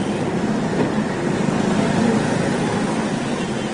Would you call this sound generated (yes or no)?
no